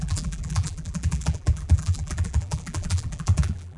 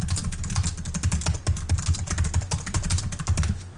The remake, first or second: first